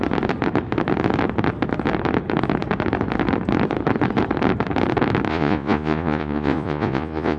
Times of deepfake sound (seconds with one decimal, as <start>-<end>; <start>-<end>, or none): 5.3-7.4